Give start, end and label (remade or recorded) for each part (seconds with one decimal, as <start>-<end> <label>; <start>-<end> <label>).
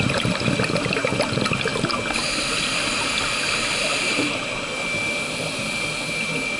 0.0-6.6 recorded